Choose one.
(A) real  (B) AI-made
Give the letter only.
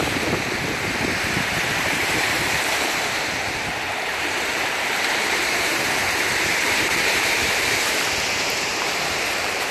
B